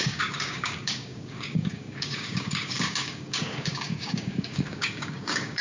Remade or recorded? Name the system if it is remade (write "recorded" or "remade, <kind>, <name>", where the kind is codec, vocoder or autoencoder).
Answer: remade, codec, DAC